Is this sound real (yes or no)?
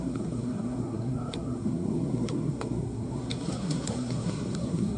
no